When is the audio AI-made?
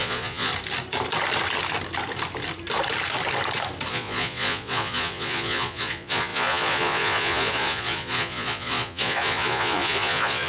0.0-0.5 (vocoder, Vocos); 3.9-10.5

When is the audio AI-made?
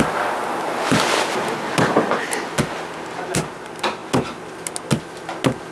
none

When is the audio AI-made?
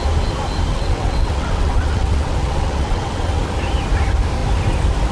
0.7-3.4 (vocoder, WaveNeXt)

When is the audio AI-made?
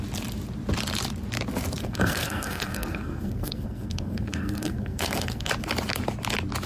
1.8-5.5 (codec, SNAC)